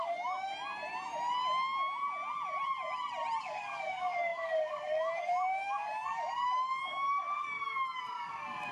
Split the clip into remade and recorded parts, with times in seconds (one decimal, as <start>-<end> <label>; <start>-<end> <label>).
0.0-0.5 remade; 0.5-3.4 recorded; 3.4-8.7 remade